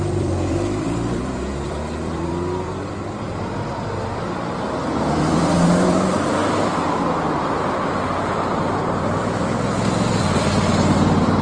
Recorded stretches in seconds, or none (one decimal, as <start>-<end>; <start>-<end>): 6.4-7.4